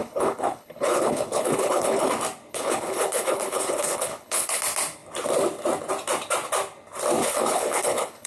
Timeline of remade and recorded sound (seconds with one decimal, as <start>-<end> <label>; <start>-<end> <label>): 0.0-2.1 remade; 2.1-2.5 recorded; 2.5-4.6 remade; 4.6-7.2 recorded; 7.2-8.3 remade